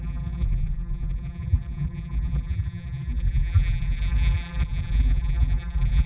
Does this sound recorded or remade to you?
remade